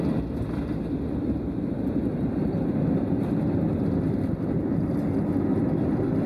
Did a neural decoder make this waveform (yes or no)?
no